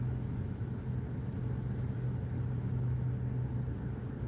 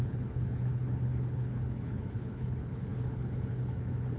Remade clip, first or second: second